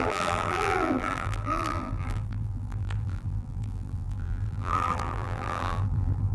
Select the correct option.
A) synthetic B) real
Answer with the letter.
A